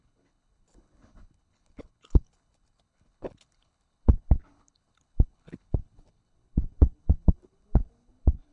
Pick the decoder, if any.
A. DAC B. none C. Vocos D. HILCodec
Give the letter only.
D